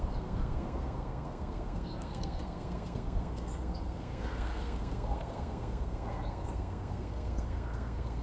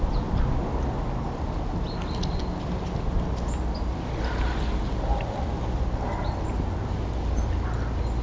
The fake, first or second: first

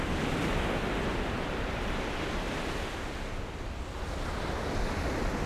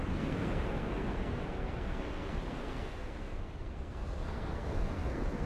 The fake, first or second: second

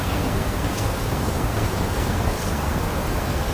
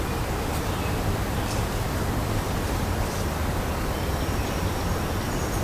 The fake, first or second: first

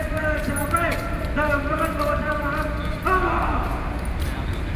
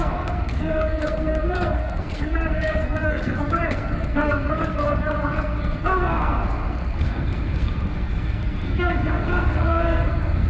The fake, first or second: second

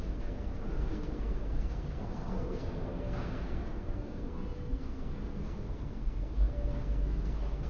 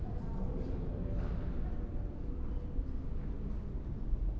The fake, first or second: first